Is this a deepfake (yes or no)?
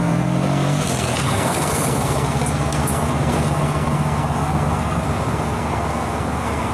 yes